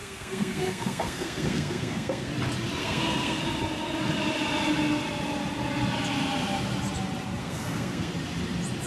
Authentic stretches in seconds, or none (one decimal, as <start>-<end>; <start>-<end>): 2.3-2.8; 3.4-7.4; 8.1-8.9